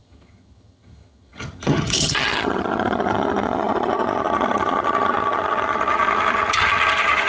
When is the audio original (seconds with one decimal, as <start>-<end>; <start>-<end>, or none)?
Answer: none